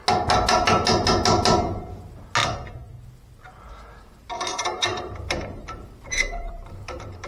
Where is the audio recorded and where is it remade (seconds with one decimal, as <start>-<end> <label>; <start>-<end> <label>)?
0.0-4.5 recorded; 4.5-7.3 remade